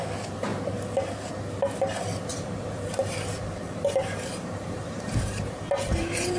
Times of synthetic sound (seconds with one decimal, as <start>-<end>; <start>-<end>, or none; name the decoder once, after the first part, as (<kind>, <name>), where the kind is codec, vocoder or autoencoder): 2.3-6.4 (vocoder, BigVGAN v2)